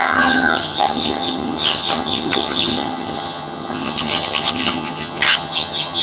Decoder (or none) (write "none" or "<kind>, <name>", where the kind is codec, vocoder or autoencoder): vocoder, HiFi-GAN